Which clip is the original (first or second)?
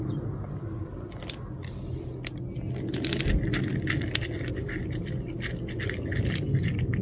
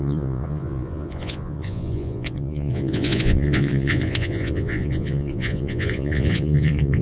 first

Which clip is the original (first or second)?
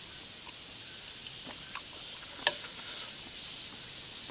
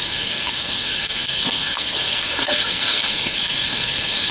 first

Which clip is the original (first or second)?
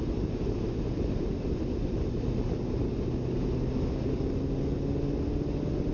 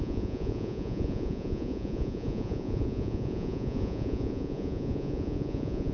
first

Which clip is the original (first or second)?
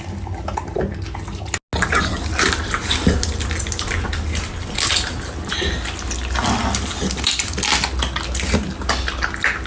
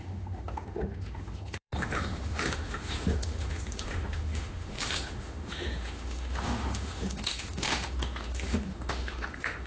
first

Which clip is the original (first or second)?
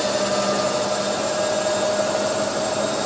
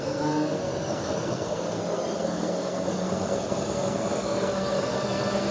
first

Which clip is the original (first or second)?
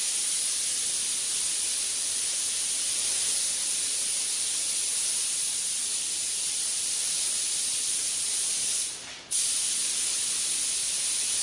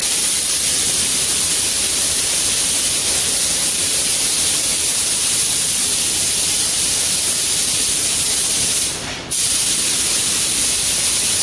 first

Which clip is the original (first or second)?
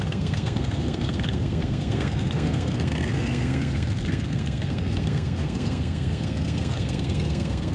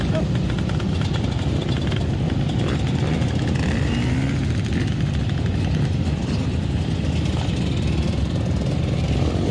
second